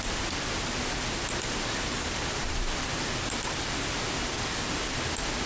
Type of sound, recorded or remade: recorded